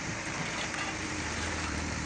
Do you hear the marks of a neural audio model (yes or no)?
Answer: yes